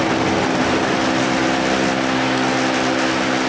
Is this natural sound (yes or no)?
yes